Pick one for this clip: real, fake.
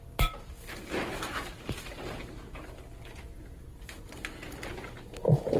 real